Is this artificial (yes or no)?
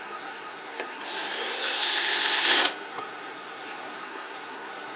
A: yes